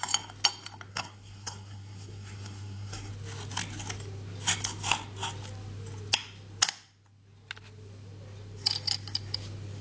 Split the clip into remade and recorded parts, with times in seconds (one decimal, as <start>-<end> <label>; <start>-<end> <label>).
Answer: 0.0-0.9 recorded; 0.9-3.1 remade; 3.1-9.8 recorded